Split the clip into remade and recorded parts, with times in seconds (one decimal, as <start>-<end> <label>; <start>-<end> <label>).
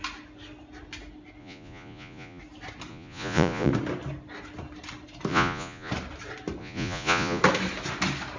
0.0-1.4 recorded; 1.4-2.4 remade; 2.4-2.9 recorded; 2.9-3.7 remade; 3.7-5.3 recorded; 5.3-5.9 remade; 5.9-6.6 recorded; 6.6-7.4 remade; 7.4-8.4 recorded